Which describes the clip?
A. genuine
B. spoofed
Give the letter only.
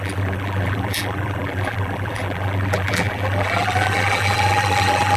B